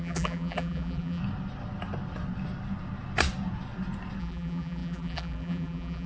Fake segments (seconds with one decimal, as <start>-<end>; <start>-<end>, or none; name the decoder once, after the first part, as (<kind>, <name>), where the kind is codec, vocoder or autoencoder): 0.0-1.2 (vocoder, BigVGAN v2); 4.2-6.1